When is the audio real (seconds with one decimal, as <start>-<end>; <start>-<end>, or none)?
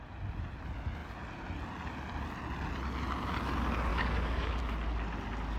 0.0-3.9; 4.6-5.6